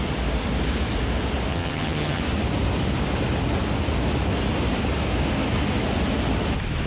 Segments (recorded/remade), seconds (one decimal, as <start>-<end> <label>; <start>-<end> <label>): 0.0-1.5 recorded; 1.5-2.2 remade; 2.2-6.9 recorded